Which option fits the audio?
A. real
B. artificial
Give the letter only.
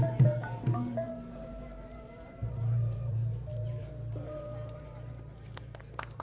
B